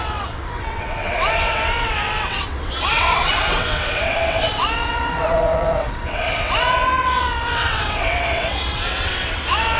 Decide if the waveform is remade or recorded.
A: remade